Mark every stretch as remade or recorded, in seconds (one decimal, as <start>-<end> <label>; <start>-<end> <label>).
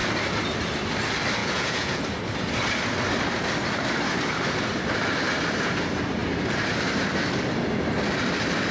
0.0-1.4 recorded; 1.4-2.0 remade; 2.0-8.7 recorded